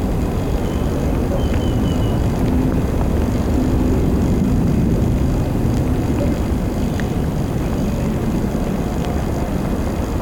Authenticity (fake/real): real